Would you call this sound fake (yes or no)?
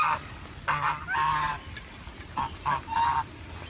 no